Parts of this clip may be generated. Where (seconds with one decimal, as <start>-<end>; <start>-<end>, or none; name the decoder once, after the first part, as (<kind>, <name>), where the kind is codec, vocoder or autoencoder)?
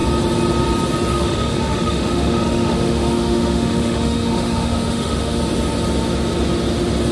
1.1-5.4 (autoencoder, DAC-VAE)